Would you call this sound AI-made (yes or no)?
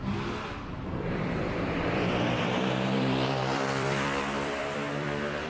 yes